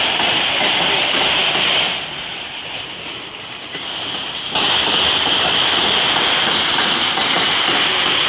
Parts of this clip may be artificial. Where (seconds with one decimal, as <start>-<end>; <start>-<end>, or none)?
none